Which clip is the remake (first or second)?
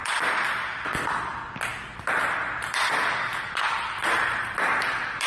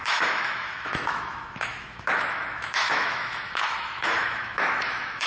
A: second